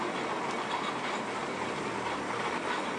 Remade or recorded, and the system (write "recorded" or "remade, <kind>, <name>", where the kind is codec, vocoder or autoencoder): recorded